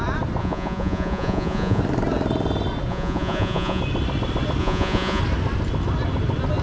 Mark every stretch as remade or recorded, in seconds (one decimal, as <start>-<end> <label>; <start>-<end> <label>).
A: 0.0-0.4 recorded; 0.4-1.8 remade; 1.8-2.9 recorded; 2.9-3.8 remade; 3.8-4.6 recorded; 4.6-5.2 remade; 5.2-6.6 recorded